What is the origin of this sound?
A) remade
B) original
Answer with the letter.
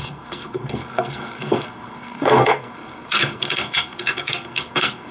A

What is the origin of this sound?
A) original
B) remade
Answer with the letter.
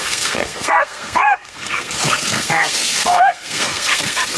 B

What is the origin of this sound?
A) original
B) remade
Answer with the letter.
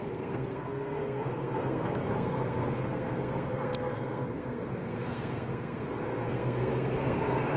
B